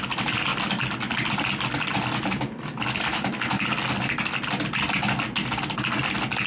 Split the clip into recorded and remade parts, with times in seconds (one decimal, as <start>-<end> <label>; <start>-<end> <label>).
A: 0.0-6.5 recorded